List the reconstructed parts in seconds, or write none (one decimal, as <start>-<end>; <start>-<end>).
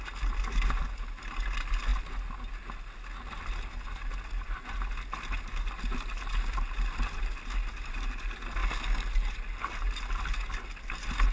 none